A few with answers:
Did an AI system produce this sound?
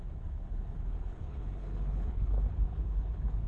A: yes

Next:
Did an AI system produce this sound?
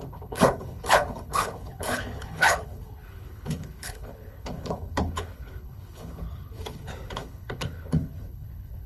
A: yes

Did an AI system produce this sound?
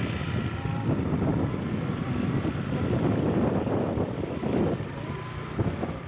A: no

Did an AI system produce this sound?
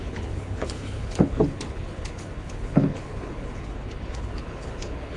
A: yes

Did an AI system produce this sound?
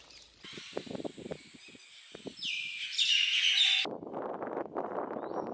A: no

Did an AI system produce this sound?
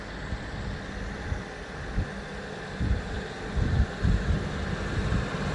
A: no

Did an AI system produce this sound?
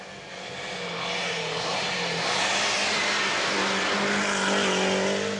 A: no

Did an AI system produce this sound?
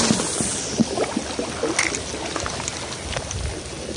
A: no